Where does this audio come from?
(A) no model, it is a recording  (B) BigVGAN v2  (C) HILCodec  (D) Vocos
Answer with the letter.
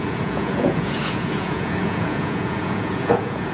D